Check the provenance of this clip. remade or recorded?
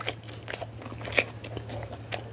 recorded